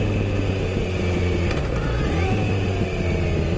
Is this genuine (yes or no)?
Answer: yes